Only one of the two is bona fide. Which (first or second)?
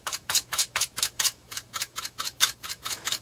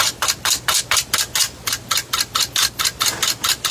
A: second